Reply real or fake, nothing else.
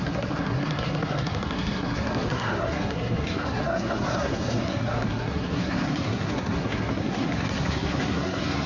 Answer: fake